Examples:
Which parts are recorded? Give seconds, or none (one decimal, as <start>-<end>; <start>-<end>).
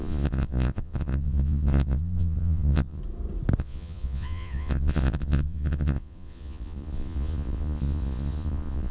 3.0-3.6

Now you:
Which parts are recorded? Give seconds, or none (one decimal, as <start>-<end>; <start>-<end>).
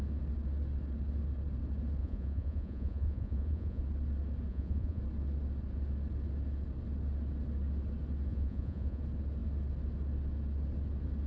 0.0-2.0; 3.8-4.5; 5.0-8.3; 9.0-11.3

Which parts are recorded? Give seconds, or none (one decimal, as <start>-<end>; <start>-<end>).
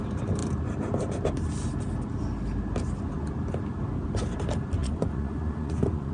0.0-4.8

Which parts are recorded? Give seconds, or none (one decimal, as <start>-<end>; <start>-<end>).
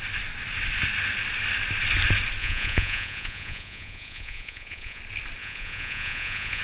0.0-2.4; 5.0-5.4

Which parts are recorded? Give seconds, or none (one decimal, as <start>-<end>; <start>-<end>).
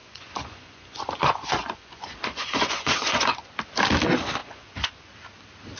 3.5-4.4; 5.1-5.8